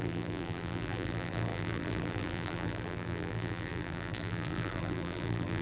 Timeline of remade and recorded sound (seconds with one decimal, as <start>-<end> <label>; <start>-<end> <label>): 0.0-5.6 remade